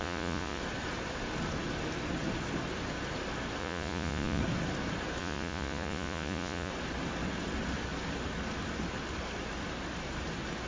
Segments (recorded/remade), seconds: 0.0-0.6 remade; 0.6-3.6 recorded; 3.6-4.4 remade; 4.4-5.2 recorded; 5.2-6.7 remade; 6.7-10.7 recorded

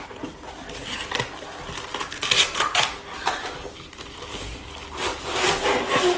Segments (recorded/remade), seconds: 0.0-6.2 recorded

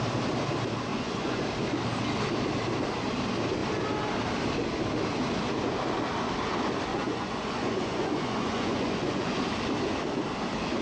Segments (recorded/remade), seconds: 0.0-0.9 recorded; 0.9-1.4 remade; 1.4-6.9 recorded; 6.9-9.4 remade; 9.4-10.8 recorded

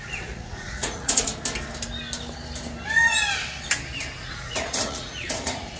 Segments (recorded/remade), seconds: 0.0-1.3 remade; 1.3-4.2 recorded; 4.2-5.8 remade

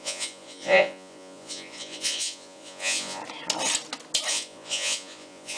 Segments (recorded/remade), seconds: 0.0-3.2 remade; 3.2-4.3 recorded; 4.3-5.6 remade

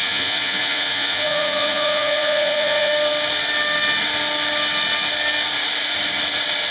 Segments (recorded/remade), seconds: 0.0-2.9 remade; 2.9-6.7 recorded

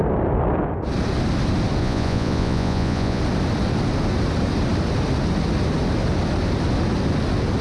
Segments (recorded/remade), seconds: 0.0-1.8 recorded; 1.8-3.2 remade; 3.2-7.6 recorded

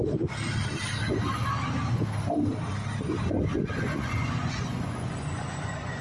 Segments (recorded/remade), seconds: 0.0-3.8 recorded; 3.8-6.0 remade